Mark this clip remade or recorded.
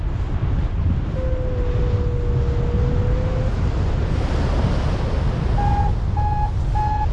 recorded